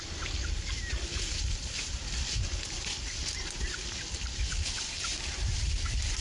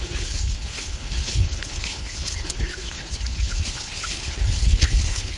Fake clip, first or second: second